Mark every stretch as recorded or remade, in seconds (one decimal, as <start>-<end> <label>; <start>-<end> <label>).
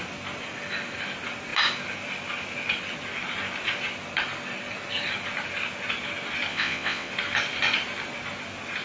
0.0-6.5 recorded; 6.5-7.1 remade; 7.1-8.8 recorded